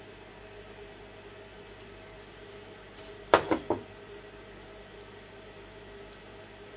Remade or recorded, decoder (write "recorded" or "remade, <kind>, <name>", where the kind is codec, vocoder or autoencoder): recorded